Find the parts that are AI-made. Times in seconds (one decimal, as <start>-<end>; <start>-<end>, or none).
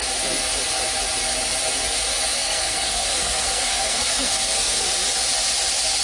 2.4-4.9